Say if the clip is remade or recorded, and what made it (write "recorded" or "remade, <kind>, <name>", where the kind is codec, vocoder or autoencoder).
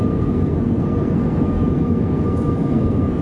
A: remade, codec, SNAC